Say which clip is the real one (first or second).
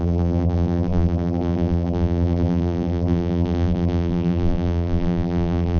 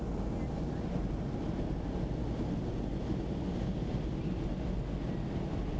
second